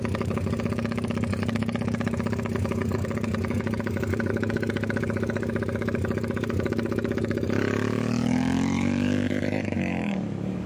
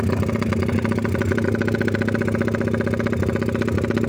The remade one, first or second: first